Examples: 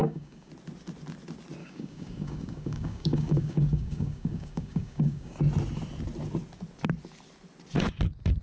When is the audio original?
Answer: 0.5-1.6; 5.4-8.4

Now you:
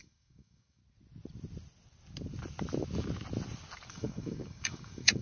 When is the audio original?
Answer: 0.8-3.9

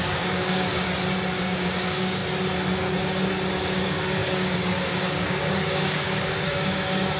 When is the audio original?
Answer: 0.7-1.4; 2.2-3.5

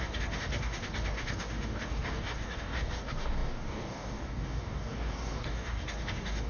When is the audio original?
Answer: none

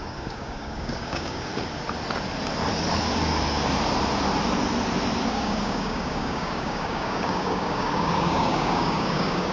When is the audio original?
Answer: 1.5-5.3

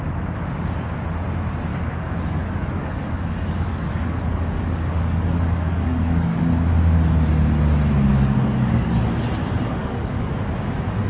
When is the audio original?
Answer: 0.0-1.7; 6.4-8.1; 9.3-9.8; 10.3-11.1

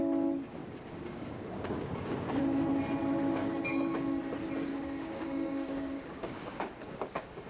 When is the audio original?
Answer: 0.0-0.6; 2.4-3.4; 4.2-4.7